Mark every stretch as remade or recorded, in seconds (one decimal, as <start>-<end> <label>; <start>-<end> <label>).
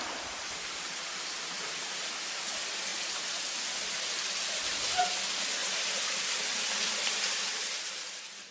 0.0-8.5 recorded